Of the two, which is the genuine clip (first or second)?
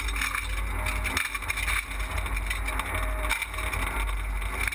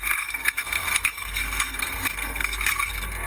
first